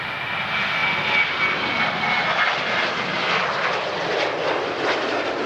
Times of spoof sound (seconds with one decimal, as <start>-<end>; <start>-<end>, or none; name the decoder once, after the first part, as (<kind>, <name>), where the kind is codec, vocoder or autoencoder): none